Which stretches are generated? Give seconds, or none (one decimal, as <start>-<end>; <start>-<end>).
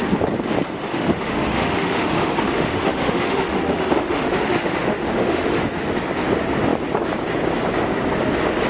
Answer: 0.8-5.9